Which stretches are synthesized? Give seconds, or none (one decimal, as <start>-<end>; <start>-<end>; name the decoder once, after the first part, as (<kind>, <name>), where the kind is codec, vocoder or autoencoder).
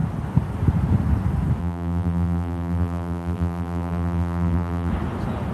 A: 1.6-4.9 (vocoder, BigVGAN v2)